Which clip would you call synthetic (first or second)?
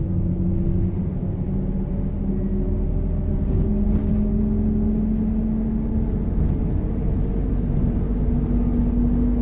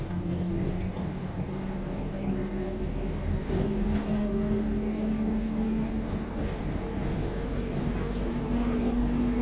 second